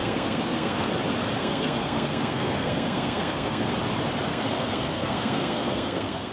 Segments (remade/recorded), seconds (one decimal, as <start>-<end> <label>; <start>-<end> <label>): 0.0-0.9 remade; 0.9-1.4 recorded; 1.4-3.7 remade; 3.7-4.3 recorded; 4.3-6.3 remade